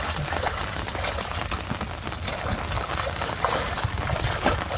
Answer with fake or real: real